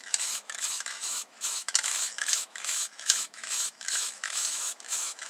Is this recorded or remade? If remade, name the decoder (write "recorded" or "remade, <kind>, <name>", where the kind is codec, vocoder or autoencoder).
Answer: remade, autoencoder, DAC-VAE